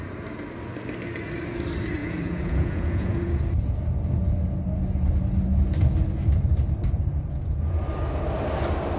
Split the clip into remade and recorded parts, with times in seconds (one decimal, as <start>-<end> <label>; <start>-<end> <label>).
0.0-2.0 recorded; 2.0-3.4 remade; 3.4-7.1 recorded; 7.1-7.8 remade; 7.8-9.0 recorded